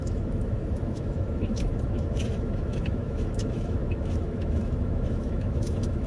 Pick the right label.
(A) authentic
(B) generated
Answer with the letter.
B